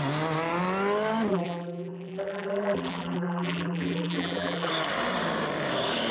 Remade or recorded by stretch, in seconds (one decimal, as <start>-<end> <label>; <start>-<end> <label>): 0.0-1.3 recorded; 1.3-4.7 remade; 4.7-6.1 recorded